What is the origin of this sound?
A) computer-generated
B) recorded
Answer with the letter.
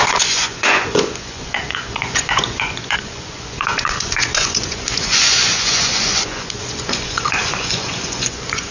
A